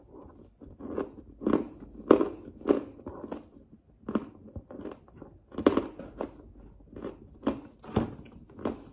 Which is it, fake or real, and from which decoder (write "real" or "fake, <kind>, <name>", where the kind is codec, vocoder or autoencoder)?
real